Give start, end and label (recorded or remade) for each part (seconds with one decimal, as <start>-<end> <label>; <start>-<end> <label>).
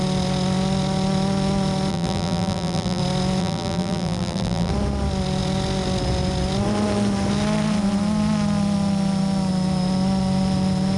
0.0-1.9 recorded; 1.9-3.0 remade; 3.0-3.4 recorded; 3.4-4.7 remade; 4.7-11.0 recorded